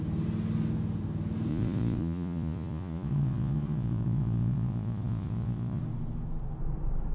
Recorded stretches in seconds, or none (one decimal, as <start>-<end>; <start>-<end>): 0.0-1.5; 5.8-7.1